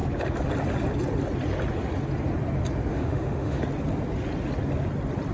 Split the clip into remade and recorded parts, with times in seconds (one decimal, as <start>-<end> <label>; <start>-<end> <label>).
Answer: 0.0-2.9 recorded; 2.9-3.6 remade; 3.6-5.3 recorded